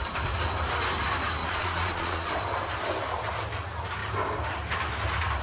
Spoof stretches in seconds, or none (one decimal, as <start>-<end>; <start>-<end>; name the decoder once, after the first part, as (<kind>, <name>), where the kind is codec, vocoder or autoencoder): 1.4-2.3 (vocoder, Vocos)